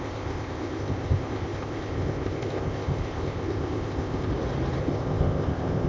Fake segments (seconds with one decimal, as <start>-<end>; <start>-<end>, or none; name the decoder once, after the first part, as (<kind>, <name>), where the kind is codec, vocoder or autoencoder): 0.0-4.3 (codec, ZipCodec); 4.8-5.9

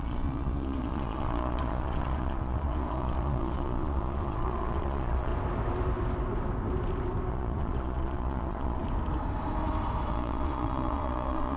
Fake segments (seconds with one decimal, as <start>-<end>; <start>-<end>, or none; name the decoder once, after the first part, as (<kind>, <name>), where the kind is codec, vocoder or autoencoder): 0.0-5.3 (vocoder, Vocos); 7.3-8.8; 10.1-11.6

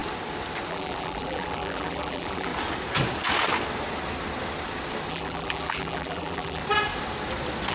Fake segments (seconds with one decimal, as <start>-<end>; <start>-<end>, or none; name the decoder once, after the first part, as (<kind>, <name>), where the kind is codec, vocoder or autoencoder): 0.7-2.5 (vocoder, BigVGAN v2); 5.1-6.6

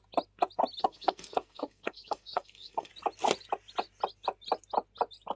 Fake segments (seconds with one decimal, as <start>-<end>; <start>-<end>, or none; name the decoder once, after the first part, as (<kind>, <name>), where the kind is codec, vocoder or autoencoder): 0.8-2.9 (codec, SNAC)

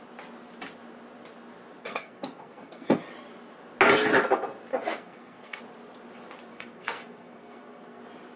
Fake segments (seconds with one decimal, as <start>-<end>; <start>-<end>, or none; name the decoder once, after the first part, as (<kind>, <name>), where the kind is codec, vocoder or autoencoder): 1.8-3.0 (codec, SNAC); 4.7-5.6; 6.5-8.0

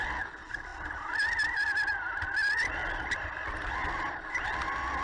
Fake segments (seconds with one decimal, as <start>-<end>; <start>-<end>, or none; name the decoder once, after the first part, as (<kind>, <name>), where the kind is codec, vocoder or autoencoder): none